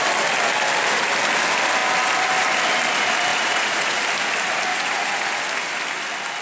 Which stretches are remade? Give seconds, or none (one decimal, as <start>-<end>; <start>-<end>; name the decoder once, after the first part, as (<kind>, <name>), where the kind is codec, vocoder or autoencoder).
3.3-4.0 (vocoder, Vocos); 4.7-5.4